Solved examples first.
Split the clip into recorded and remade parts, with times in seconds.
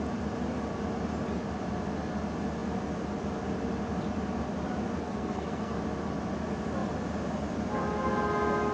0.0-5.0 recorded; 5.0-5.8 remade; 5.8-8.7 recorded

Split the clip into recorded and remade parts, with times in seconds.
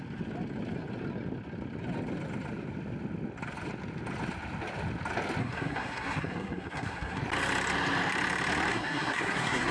0.0-5.4 recorded; 5.4-7.2 remade; 7.2-8.7 recorded; 8.7-9.7 remade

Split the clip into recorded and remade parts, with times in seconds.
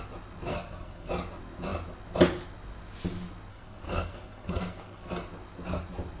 0.0-0.5 recorded; 0.5-1.1 remade; 1.1-3.5 recorded; 3.5-5.3 remade; 5.3-6.2 recorded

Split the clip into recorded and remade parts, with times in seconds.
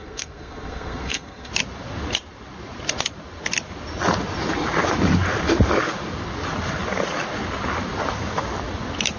0.0-1.5 remade; 1.5-9.2 recorded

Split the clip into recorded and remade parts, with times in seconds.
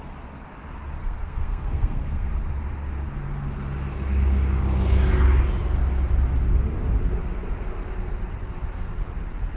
0.0-1.0 recorded; 1.0-2.3 remade; 2.3-9.6 recorded